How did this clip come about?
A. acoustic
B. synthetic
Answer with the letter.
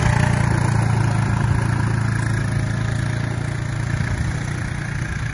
A